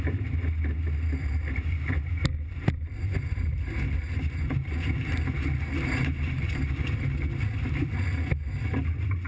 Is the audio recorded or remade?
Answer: recorded